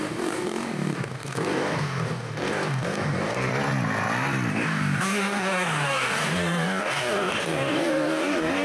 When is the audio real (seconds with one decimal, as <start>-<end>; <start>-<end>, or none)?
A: 3.5-4.5